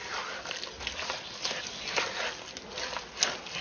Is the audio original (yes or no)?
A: yes